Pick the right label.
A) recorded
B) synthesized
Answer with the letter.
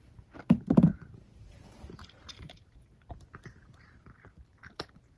B